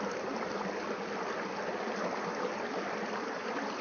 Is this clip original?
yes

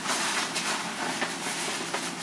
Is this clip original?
yes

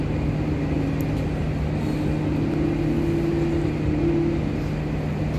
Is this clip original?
yes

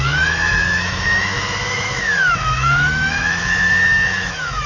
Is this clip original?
no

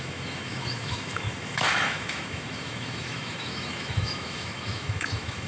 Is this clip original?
no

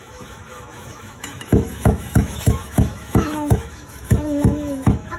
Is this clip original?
no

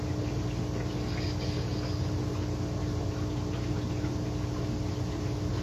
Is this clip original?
yes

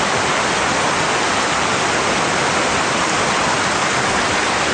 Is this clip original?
yes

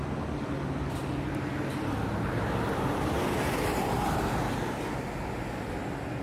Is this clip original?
yes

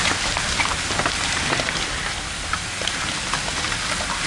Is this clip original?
yes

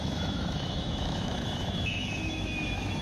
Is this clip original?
no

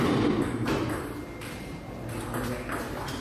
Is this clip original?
yes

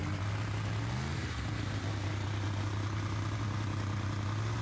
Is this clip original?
yes